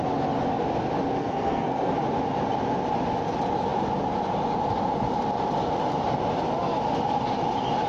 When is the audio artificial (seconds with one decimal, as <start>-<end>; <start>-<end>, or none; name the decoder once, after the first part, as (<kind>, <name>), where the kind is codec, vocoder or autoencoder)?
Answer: 1.2-1.9 (codec, SNAC)